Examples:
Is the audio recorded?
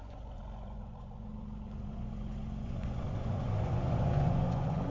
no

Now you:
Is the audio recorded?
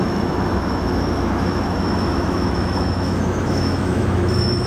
no